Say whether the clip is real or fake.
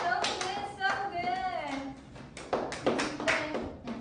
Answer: real